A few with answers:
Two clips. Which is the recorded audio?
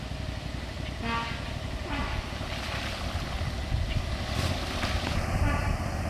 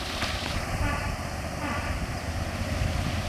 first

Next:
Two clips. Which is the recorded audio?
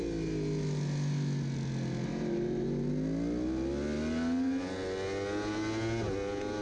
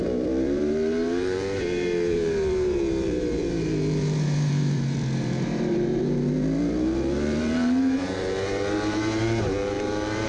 first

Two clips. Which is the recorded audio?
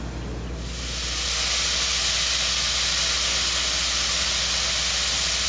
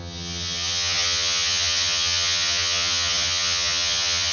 first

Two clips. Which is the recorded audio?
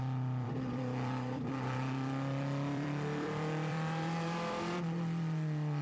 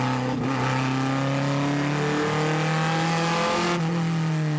second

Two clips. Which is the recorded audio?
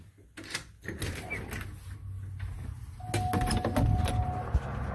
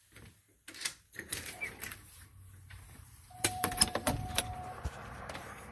first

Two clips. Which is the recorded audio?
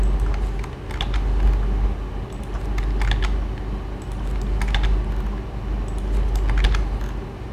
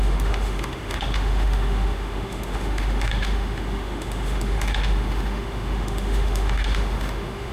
first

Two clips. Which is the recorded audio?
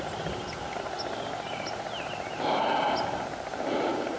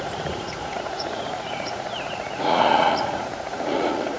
first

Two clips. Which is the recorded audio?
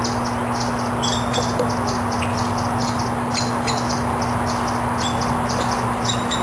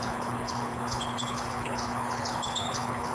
first